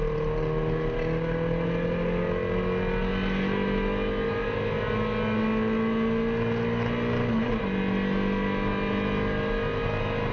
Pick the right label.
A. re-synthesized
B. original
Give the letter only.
B